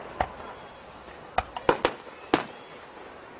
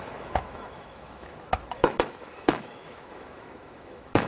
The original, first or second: first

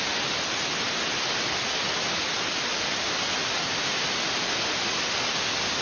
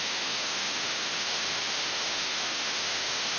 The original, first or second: first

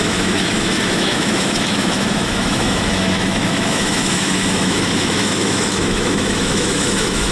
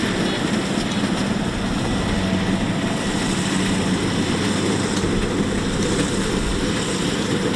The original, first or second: second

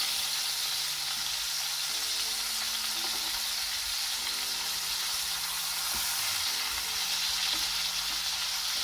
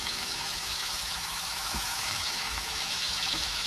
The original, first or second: first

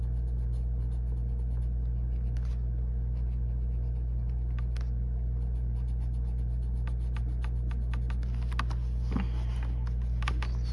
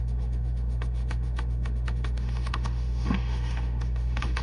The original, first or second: first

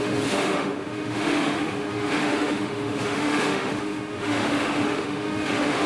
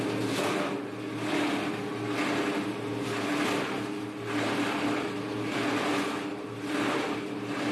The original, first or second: second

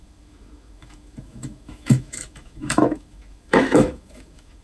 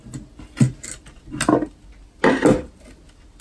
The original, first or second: second